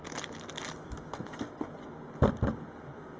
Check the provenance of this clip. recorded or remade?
recorded